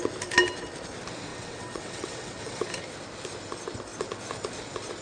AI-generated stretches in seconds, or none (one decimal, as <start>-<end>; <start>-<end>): 1.3-2.6